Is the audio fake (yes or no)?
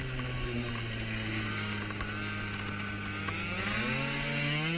no